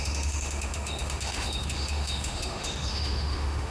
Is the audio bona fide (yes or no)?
no